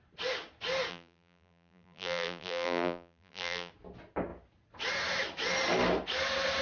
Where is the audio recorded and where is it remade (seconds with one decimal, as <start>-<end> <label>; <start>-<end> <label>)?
0.0-0.9 recorded; 0.9-3.7 remade; 3.7-6.6 recorded